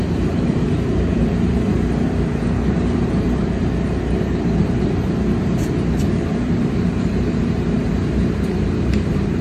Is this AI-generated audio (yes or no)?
yes